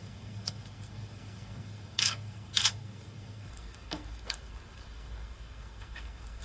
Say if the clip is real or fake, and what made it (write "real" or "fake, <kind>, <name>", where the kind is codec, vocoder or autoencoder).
fake, codec, SNAC